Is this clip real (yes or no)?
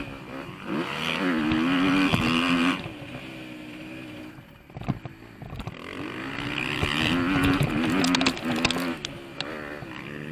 yes